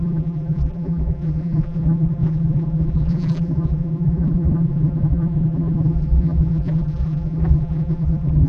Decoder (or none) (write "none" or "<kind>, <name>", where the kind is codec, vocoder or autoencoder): vocoder, BigVGAN v2